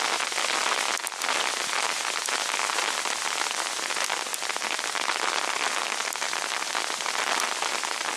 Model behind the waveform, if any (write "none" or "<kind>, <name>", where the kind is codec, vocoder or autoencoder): none